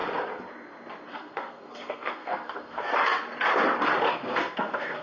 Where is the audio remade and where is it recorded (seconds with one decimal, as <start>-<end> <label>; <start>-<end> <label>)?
0.0-1.1 recorded; 1.1-2.9 remade; 2.9-4.1 recorded; 4.1-5.0 remade